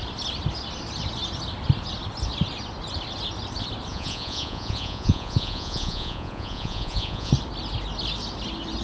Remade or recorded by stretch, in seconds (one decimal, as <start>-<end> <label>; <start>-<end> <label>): 0.0-3.9 recorded; 3.9-7.3 remade; 7.3-8.8 recorded